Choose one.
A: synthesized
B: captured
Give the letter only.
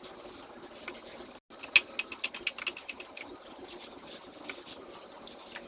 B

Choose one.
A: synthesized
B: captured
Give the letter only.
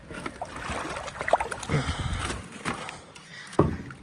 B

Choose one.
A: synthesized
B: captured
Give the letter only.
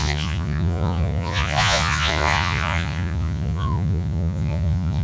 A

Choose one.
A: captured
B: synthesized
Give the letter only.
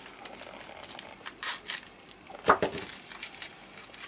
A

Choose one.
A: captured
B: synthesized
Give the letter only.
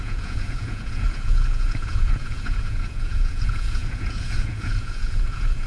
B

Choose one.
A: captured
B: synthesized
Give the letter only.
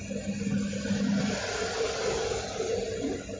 A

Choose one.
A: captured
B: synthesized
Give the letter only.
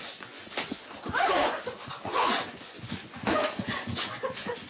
B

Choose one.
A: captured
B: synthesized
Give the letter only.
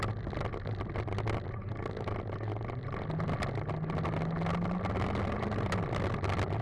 A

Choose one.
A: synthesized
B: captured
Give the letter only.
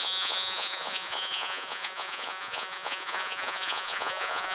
A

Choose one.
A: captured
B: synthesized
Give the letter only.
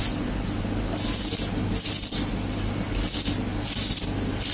A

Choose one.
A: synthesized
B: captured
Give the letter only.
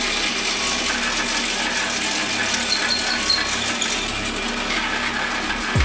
B